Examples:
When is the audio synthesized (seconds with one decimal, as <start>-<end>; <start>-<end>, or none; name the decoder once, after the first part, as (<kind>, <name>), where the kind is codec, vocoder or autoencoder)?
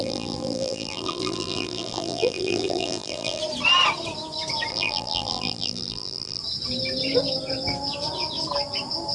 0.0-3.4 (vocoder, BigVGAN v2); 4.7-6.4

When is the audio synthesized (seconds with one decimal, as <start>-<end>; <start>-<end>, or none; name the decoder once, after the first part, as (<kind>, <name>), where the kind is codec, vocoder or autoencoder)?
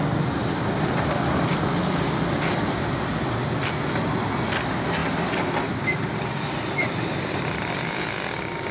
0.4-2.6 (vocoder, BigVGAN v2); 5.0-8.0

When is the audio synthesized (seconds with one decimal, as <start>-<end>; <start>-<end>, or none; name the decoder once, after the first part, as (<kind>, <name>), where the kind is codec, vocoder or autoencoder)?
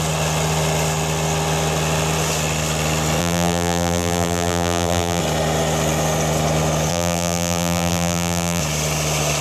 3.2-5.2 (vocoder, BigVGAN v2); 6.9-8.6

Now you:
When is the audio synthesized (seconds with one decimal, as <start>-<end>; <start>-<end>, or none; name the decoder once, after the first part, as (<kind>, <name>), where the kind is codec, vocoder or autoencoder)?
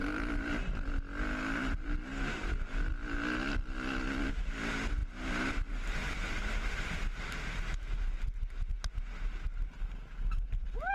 0.0-0.5 (vocoder, BigVGAN v2)